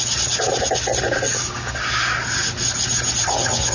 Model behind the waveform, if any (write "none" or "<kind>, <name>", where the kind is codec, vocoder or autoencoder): none